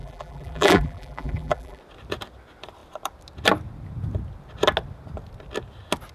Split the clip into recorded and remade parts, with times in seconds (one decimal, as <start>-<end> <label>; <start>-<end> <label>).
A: 0.0-1.8 remade; 1.8-6.1 recorded